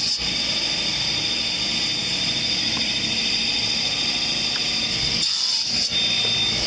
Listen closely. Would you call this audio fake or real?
real